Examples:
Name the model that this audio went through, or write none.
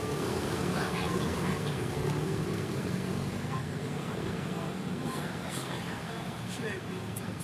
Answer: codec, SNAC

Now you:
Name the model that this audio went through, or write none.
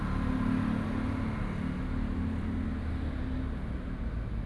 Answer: none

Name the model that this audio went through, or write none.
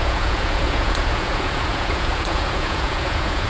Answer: vocoder, Vocos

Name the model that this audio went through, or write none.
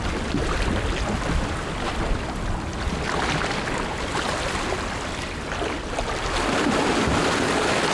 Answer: none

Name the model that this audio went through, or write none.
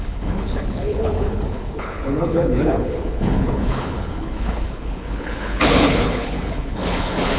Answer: codec, HILCodec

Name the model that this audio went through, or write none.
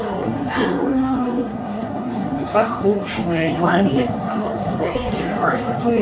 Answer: codec, SNAC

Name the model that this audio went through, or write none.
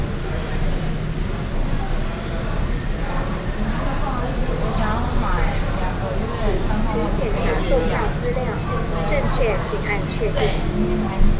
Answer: none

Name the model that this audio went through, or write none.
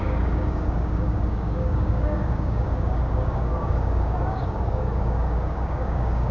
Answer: codec, DAC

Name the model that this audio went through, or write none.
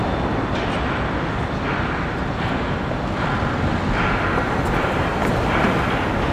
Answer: none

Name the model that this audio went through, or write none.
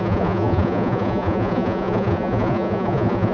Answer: vocoder, Vocos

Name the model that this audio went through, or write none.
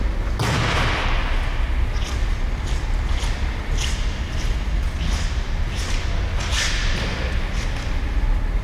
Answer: none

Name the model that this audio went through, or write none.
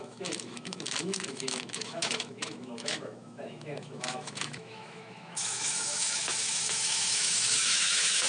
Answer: autoencoder, DAC-VAE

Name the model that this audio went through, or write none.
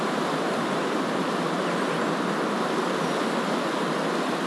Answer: none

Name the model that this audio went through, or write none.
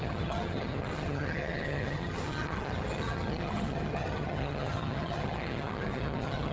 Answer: vocoder, HiFi-GAN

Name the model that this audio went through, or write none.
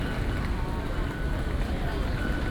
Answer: none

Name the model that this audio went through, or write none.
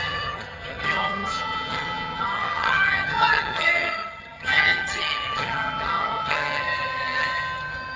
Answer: vocoder, HiFi-GAN